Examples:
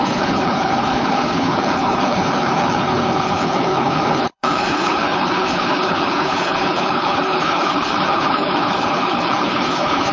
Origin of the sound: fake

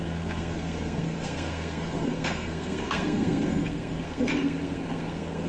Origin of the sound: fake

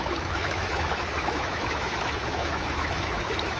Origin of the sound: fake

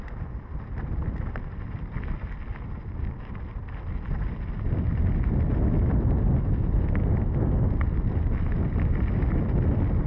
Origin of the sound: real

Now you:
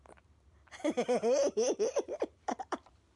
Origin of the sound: fake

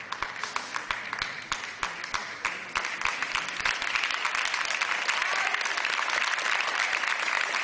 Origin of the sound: real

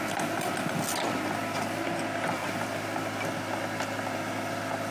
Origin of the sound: real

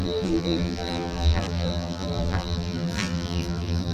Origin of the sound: fake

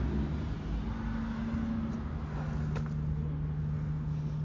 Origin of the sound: real